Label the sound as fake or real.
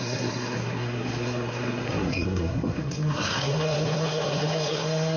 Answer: fake